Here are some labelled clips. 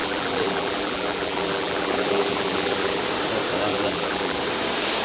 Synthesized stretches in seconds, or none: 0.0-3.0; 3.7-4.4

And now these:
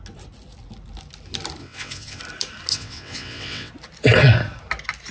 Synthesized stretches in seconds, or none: 1.6-2.2; 2.7-3.7

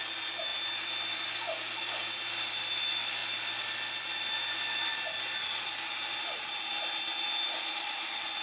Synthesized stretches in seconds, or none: none

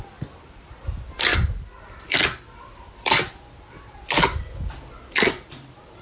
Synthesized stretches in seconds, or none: none

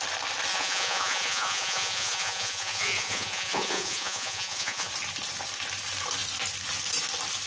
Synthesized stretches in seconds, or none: 0.5-4.9

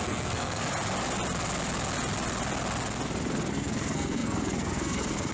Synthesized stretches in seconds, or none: 0.0-0.6; 3.5-5.3

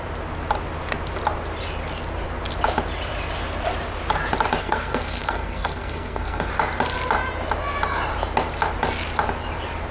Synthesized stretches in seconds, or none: 4.6-6.5